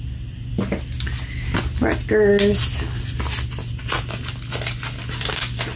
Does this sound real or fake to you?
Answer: real